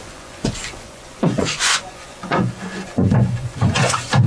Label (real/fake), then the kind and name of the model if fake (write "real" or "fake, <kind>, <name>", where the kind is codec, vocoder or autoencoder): fake, vocoder, Vocos